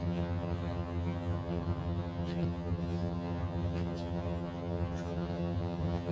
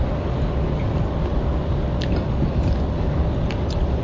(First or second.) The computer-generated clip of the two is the first